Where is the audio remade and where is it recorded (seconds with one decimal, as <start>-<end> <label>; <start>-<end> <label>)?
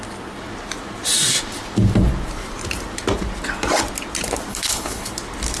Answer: 0.0-4.5 recorded; 4.5-5.1 remade; 5.1-5.6 recorded